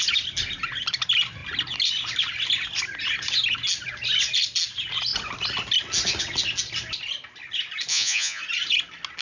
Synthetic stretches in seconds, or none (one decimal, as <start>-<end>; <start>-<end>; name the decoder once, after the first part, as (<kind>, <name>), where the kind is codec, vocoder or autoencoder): 7.9-8.4 (vocoder, Vocos)